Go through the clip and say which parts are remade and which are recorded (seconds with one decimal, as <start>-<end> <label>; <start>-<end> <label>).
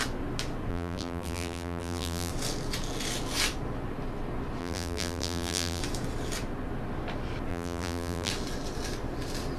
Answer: 0.0-0.7 recorded; 0.7-2.3 remade; 2.3-4.6 recorded; 4.6-5.8 remade; 5.8-7.5 recorded; 7.5-8.3 remade; 8.3-9.6 recorded